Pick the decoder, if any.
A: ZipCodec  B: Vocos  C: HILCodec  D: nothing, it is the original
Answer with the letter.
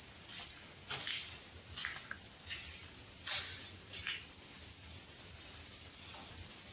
D